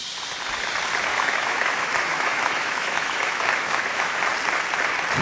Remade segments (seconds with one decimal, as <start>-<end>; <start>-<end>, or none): 1.1-4.2

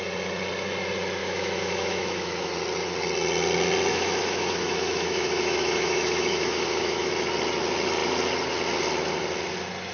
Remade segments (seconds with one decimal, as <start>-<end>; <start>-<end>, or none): 1.2-2.5; 3.9-7.1